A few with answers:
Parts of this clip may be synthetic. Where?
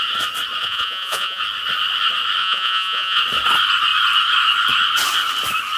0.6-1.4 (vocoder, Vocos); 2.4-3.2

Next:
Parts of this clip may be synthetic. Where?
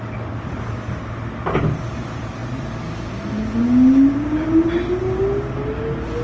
none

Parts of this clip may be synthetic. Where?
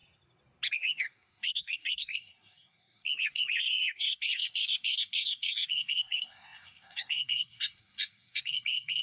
0.7-9.0 (codec, SNAC)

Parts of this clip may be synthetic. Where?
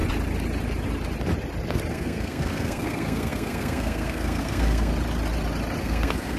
1.9-4.9 (codec, SNAC); 5.8-6.4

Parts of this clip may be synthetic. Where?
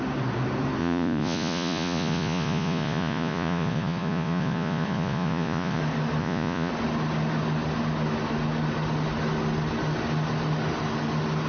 0.8-5.8 (vocoder, Vocos); 6.2-6.7